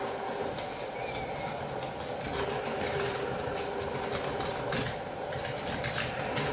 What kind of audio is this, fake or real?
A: real